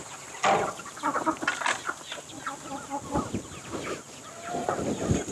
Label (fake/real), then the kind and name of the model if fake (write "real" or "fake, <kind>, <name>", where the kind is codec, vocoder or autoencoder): real